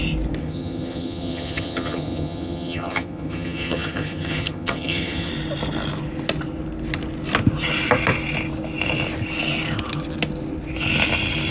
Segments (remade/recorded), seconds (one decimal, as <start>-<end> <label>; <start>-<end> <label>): 0.0-0.4 recorded; 0.4-5.3 remade; 5.3-11.5 recorded